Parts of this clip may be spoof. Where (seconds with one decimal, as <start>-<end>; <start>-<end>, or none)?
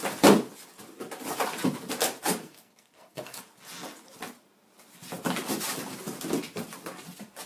2.4-3.4